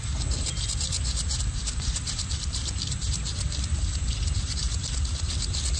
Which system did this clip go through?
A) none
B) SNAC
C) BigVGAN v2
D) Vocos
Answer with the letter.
A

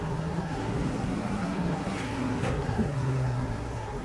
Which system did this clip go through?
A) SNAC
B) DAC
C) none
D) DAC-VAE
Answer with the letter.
A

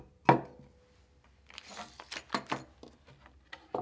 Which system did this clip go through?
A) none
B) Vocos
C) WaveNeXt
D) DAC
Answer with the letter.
A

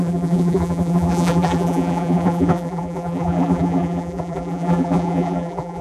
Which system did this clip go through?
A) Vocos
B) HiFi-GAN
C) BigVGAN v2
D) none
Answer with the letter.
C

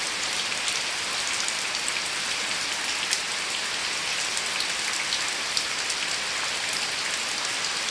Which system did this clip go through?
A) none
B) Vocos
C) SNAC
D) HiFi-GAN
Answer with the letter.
A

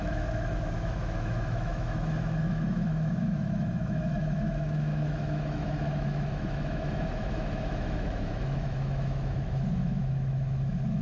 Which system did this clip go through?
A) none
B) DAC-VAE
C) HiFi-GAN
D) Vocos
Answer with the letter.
B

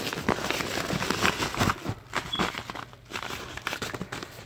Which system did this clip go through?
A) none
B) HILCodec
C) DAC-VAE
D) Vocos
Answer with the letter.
A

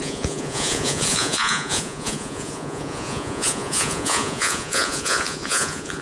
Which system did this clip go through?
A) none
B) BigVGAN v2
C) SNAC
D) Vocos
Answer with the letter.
D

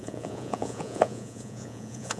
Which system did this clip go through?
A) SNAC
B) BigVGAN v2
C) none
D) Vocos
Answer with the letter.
D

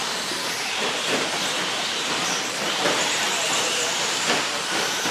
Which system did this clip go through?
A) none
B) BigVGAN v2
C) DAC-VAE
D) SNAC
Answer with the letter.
B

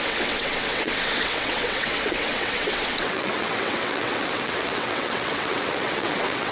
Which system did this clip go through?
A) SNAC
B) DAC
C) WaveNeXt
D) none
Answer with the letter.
C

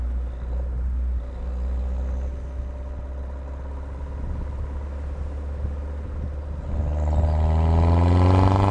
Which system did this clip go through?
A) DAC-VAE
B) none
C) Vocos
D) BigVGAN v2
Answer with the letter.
B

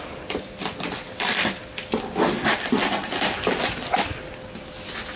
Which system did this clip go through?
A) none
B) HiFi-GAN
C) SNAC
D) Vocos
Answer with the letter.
A